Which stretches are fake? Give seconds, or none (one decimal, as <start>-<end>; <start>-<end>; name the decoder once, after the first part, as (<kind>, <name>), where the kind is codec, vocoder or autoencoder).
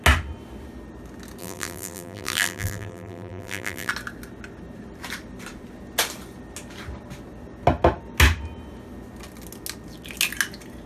1.4-3.9 (vocoder, BigVGAN v2)